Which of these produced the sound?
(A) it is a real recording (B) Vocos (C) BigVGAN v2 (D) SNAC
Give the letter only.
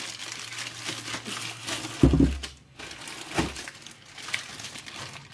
A